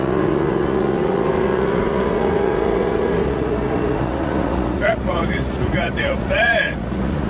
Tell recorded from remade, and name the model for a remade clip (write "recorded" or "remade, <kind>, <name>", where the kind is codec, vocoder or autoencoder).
remade, vocoder, Vocos